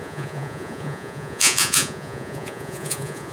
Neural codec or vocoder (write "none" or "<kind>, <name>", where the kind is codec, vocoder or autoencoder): vocoder, Vocos